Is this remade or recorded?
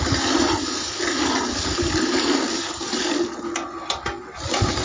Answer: recorded